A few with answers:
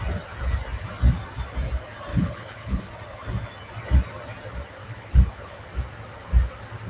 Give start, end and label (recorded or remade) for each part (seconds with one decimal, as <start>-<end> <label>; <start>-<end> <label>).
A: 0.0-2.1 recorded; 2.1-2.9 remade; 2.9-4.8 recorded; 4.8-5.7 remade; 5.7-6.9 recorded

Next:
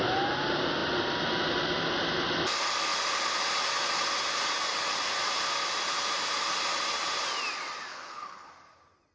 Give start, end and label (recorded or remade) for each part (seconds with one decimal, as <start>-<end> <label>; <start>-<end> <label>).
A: 0.0-7.9 recorded; 7.9-8.5 remade; 8.5-9.1 recorded

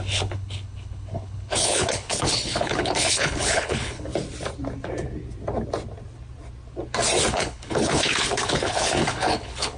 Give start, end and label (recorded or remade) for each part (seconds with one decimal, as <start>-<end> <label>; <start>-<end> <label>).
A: 0.0-4.1 remade; 4.1-7.3 recorded; 7.3-9.8 remade

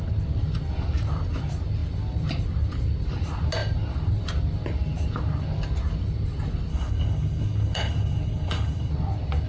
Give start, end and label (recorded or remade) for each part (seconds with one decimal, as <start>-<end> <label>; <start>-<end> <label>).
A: 0.0-6.7 recorded; 6.7-8.9 remade; 8.9-9.5 recorded